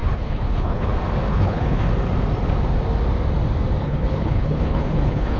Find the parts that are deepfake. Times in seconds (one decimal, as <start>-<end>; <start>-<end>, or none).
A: 0.0-0.9; 1.3-1.9; 3.8-5.4